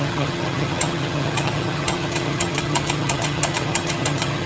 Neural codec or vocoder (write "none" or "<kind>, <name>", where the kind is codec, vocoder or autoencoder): vocoder, HiFi-GAN